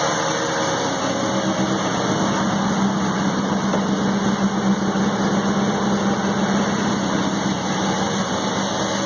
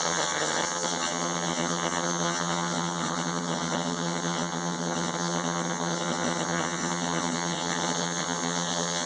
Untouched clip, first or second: first